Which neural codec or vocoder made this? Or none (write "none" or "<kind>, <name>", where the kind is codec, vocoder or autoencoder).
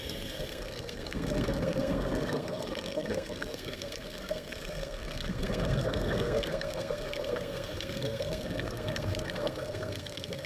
codec, SNAC